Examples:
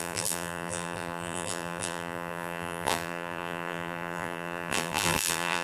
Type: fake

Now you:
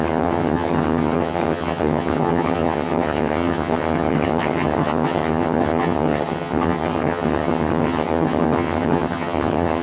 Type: fake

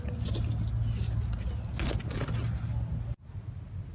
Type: real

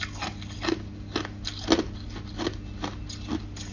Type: real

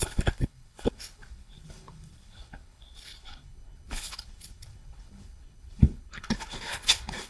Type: fake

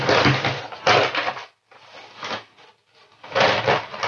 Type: real